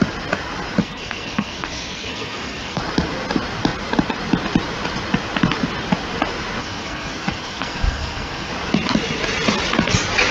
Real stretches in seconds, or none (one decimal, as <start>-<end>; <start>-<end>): 0.0-0.8; 2.8-6.6; 8.5-10.3

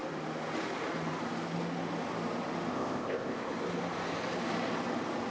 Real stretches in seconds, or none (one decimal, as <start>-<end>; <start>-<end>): 0.0-2.7; 3.5-5.3

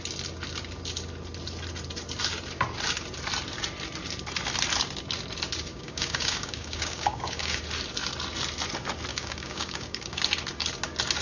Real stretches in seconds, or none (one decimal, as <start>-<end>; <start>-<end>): 0.0-5.7; 7.6-9.1; 10.2-11.2

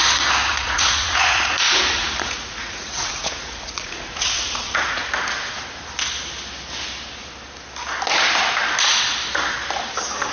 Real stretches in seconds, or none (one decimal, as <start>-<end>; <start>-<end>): 0.0-0.5; 5.1-10.3

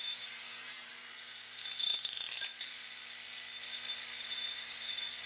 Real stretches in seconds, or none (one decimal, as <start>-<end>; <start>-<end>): 3.0-4.2

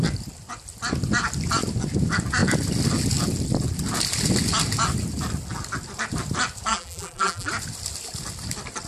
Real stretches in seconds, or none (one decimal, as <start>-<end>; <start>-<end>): 0.0-6.7; 7.5-8.9

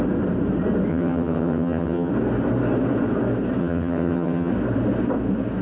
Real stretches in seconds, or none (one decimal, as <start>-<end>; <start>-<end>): 0.0-0.9; 2.1-3.6; 4.5-5.6